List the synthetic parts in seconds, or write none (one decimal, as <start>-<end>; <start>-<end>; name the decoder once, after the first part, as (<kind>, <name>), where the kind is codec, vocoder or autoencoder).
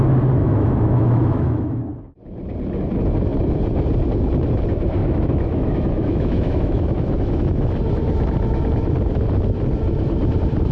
0.4-1.8 (autoencoder, DAC-VAE); 5.0-7.7